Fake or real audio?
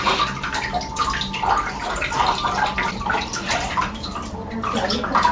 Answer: fake